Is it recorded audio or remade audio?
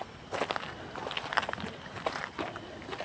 recorded